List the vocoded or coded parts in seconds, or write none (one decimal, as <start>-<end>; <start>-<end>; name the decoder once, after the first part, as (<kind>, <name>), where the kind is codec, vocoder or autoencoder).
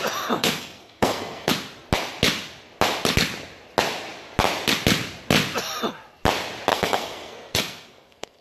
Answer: 0.4-1.5 (codec, SNAC); 6.7-8.4